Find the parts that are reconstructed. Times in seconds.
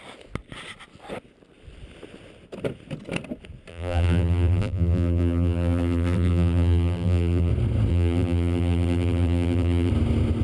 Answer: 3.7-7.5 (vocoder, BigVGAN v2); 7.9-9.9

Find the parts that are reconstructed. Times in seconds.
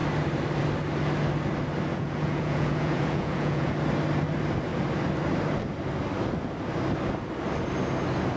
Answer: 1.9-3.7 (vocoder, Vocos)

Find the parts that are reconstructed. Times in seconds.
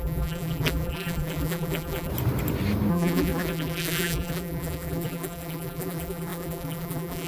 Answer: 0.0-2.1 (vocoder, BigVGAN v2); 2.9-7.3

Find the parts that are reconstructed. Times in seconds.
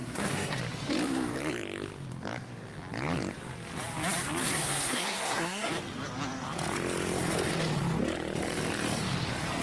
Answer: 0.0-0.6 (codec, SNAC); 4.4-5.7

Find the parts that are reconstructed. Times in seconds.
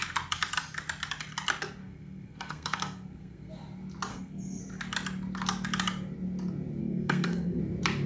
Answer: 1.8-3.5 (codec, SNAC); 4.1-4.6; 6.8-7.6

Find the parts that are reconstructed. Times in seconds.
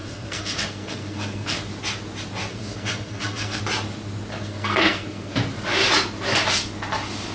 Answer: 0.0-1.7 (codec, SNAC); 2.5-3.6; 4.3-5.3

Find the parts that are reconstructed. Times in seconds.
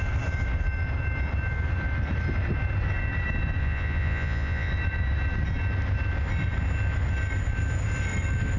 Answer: 3.6-4.7 (vocoder, Vocos)